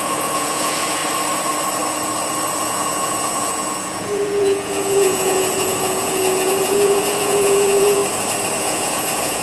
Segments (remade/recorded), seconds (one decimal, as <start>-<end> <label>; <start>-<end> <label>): 0.0-1.0 remade; 1.0-2.6 recorded; 2.6-8.0 remade; 8.0-8.6 recorded; 8.6-9.4 remade